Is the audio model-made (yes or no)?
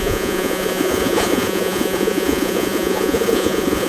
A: yes